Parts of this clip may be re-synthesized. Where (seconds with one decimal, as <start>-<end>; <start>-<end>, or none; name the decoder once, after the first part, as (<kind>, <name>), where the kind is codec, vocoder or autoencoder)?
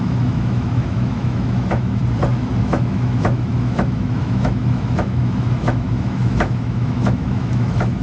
0.0-2.0 (autoencoder, DAC-VAE); 2.6-8.0